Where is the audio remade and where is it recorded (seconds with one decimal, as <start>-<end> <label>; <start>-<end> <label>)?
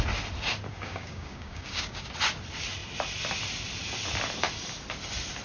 0.0-0.7 recorded; 0.7-2.1 remade; 2.1-5.4 recorded